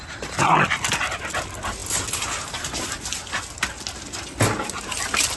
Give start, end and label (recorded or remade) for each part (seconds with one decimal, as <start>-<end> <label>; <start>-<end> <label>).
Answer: 0.0-5.4 recorded